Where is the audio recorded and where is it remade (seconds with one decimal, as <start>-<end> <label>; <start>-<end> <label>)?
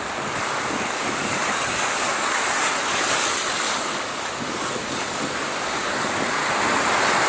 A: 0.0-6.4 remade; 6.4-7.3 recorded